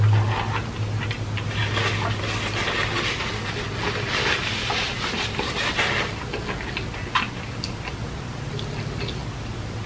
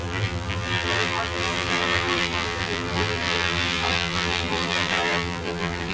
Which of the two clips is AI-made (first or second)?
second